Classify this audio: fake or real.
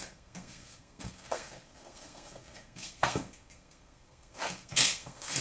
fake